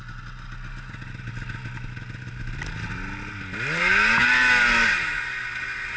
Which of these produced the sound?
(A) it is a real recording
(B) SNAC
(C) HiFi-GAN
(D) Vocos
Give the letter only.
A